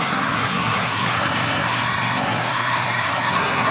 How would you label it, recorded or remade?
remade